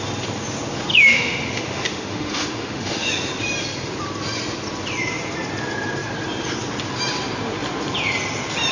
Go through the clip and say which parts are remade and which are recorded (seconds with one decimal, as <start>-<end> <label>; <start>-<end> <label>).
0.0-0.9 recorded; 0.9-3.1 remade; 3.1-8.7 recorded